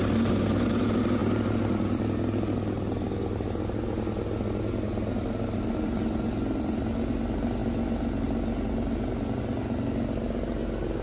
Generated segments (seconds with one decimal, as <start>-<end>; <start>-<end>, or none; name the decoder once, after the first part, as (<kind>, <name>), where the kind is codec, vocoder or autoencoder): none